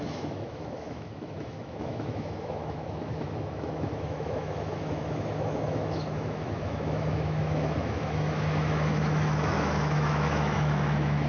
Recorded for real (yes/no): no